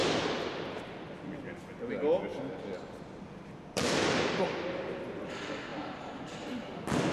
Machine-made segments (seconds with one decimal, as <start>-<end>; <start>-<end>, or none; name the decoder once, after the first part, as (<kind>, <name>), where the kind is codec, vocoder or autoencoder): 0.0-0.5 (vocoder, BigVGAN v2); 2.3-4.5; 5.7-6.2